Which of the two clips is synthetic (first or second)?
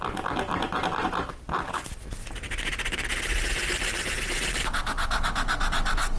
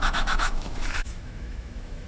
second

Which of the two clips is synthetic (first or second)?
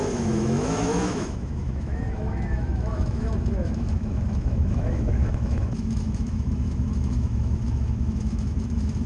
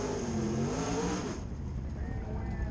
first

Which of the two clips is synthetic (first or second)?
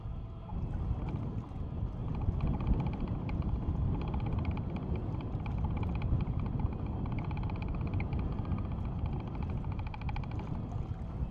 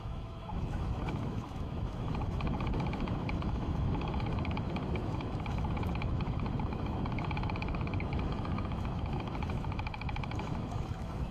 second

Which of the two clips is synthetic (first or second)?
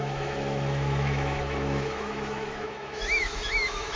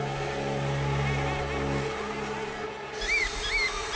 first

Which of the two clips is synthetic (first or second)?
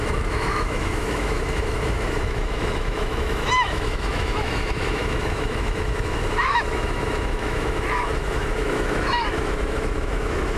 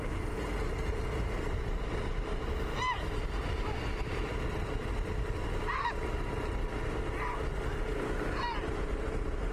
first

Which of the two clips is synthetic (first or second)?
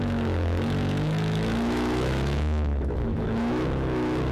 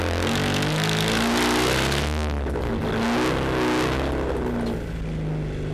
first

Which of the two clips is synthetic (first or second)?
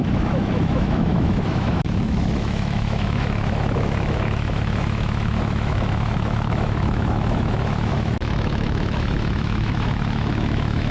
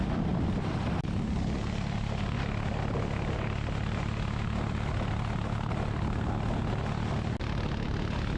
first